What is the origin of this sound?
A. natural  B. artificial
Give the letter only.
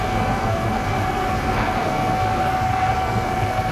B